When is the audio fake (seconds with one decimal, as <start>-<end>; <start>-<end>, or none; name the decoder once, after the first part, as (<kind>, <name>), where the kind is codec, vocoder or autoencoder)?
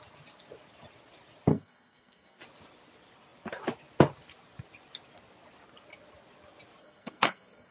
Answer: 1.5-2.4 (codec, SNAC); 6.8-7.7